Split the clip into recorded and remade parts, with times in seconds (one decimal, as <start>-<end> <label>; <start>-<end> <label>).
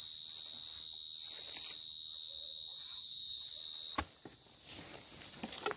0.0-2.7 recorded; 2.7-3.5 remade; 3.5-5.8 recorded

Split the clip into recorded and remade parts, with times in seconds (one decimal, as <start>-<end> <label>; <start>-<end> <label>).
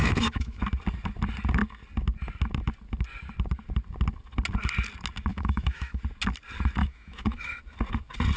0.0-0.6 remade; 0.6-5.3 recorded; 5.3-6.0 remade; 6.0-6.8 recorded; 6.8-7.6 remade; 7.6-8.4 recorded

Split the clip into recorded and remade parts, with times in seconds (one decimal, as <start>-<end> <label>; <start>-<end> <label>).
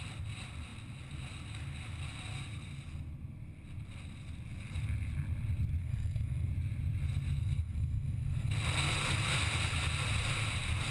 0.0-5.8 recorded; 5.8-6.5 remade; 6.5-7.4 recorded; 7.4-8.5 remade; 8.5-10.9 recorded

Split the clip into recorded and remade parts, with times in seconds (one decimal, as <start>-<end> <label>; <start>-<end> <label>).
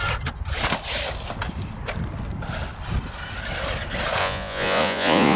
0.0-4.2 recorded; 4.2-5.4 remade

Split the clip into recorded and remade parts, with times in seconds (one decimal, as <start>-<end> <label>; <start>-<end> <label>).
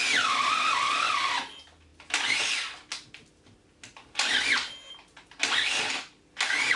0.0-6.8 recorded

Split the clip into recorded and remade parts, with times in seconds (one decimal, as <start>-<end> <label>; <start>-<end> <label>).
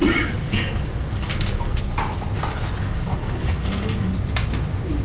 0.0-0.4 recorded; 0.4-1.8 remade; 1.8-2.8 recorded; 2.8-4.1 remade; 4.1-5.0 recorded